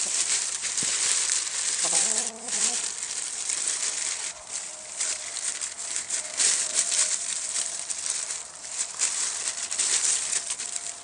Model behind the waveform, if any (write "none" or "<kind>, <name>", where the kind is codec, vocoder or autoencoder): vocoder, BigVGAN v2